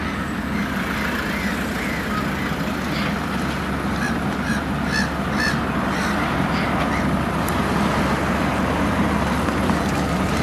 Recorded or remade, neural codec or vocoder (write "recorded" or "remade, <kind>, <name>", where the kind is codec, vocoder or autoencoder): recorded